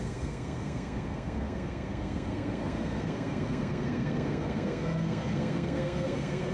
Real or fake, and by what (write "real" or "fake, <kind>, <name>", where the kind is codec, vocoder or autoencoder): fake, codec, SNAC